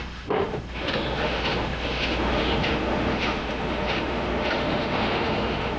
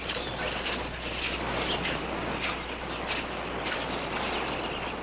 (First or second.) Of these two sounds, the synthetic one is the first